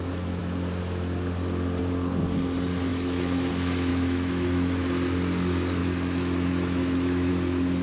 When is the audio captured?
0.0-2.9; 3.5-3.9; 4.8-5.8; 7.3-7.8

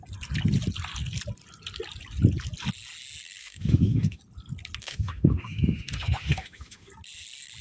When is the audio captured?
0.0-3.4; 4.2-4.8; 6.9-7.6

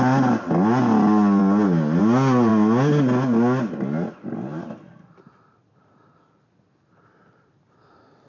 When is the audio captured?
0.0-8.3

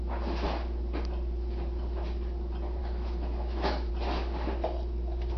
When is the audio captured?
0.0-2.8; 3.9-5.4

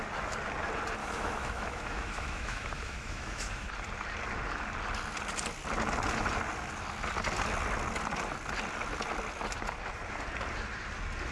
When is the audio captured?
0.0-1.0; 3.7-11.3

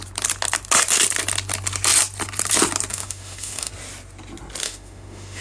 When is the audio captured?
0.0-2.9; 3.7-4.6

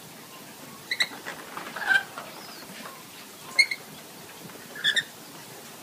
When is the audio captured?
0.0-5.8